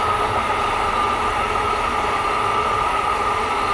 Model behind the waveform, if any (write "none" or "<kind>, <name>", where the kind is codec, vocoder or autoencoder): none